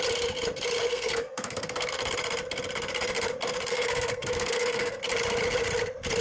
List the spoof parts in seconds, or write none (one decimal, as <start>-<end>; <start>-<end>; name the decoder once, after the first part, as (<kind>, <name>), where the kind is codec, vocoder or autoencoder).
0.9-1.9 (codec, SNAC); 3.7-5.0